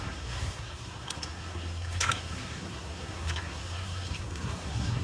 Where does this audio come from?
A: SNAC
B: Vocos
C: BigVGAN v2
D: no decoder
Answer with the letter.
A